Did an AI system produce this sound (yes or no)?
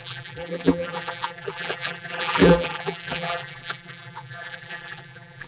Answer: yes